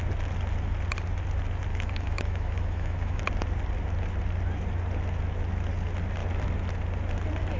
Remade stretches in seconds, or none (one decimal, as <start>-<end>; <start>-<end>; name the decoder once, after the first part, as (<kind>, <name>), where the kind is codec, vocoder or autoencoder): 1.7-3.2 (autoencoder, DAC-VAE)